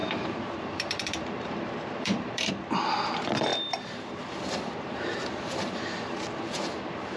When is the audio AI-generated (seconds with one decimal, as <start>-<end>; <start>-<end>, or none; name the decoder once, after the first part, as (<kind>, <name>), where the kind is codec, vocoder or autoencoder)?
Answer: 0.0-2.5 (vocoder, BigVGAN v2); 3.5-7.2